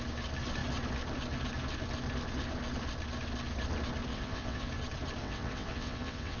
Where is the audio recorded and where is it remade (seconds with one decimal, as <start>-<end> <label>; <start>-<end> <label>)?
0.0-4.1 recorded; 4.1-4.7 remade; 4.7-5.2 recorded; 5.2-6.4 remade

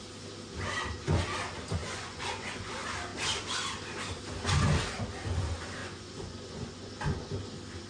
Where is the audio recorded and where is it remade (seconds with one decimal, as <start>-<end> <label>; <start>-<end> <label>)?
0.0-1.8 recorded; 1.8-2.7 remade; 2.7-5.8 recorded; 5.8-6.9 remade; 6.9-7.9 recorded